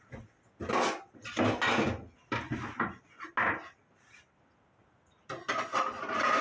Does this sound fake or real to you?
real